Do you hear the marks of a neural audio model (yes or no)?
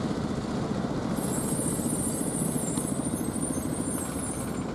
no